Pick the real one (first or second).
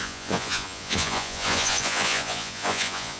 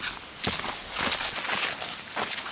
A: second